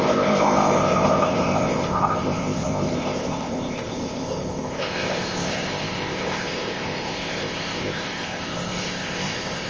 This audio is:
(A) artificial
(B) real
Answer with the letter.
A